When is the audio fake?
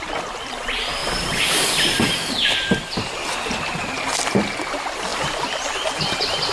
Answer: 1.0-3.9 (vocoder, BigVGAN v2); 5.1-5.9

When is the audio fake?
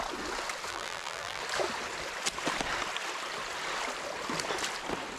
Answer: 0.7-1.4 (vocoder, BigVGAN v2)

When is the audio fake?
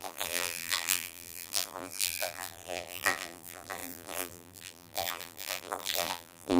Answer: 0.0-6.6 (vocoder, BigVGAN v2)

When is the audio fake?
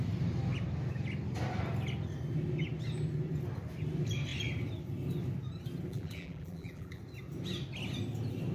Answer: 5.9-7.0 (vocoder, BigVGAN v2)